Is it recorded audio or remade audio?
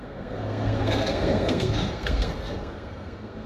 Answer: remade